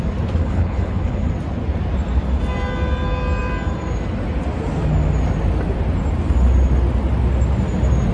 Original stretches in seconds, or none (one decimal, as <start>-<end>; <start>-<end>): 0.0-0.4; 1.3-8.1